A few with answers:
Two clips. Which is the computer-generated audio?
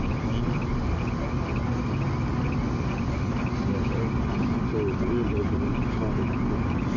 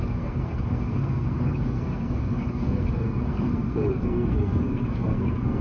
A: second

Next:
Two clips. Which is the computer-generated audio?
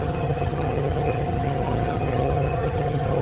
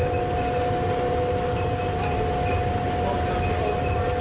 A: first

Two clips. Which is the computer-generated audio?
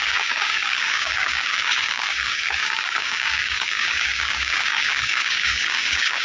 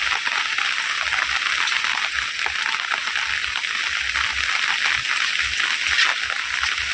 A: first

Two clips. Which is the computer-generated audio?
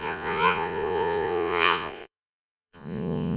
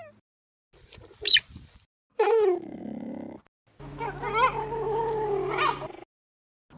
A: first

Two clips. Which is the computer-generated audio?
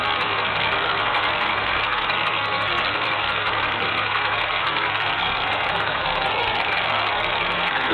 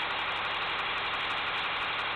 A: first